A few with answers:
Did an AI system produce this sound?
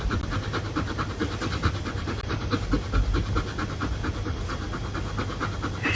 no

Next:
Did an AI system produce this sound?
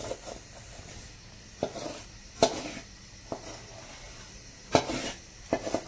no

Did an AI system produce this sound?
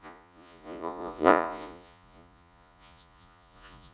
yes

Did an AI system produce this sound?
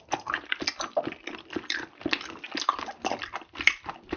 no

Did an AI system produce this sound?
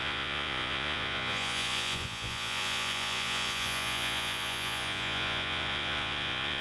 yes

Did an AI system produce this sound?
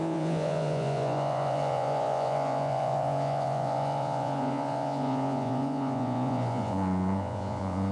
yes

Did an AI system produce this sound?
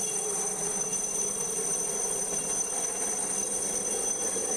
no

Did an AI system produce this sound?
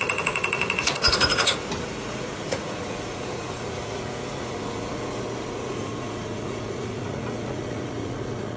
yes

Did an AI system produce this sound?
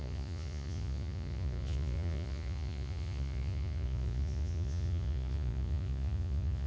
yes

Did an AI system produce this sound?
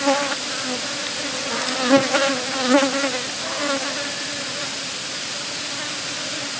no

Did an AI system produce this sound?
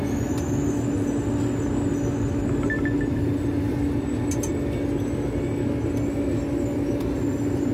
no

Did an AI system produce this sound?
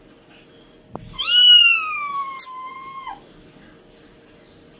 no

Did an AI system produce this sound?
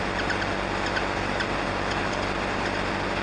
no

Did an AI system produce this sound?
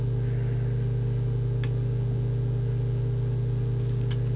no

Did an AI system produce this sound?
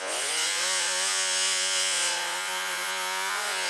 yes